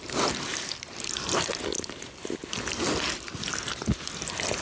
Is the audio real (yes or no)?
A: yes